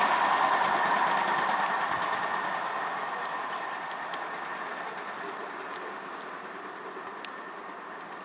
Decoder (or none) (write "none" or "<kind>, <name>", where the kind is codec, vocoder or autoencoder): none